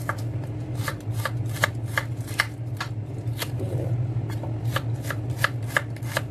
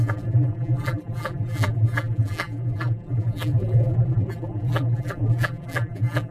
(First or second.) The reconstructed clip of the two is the second